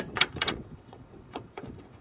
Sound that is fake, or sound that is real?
fake